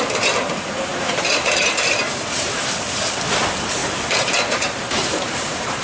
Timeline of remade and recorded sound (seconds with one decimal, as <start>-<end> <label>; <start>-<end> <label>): 0.0-5.8 remade